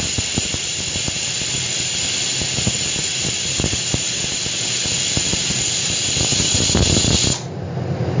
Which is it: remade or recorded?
recorded